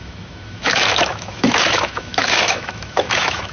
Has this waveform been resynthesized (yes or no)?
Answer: yes